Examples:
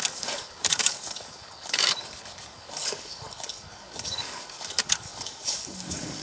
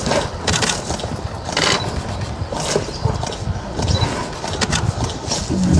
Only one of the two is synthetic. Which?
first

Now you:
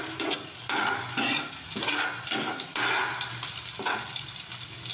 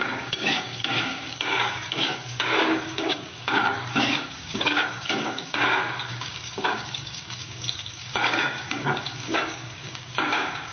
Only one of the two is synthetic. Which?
second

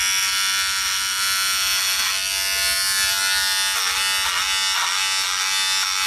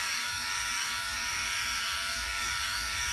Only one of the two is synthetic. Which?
second